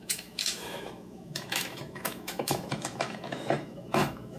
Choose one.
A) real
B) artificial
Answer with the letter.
B